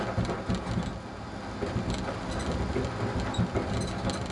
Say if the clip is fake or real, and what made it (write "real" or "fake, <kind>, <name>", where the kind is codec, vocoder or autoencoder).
real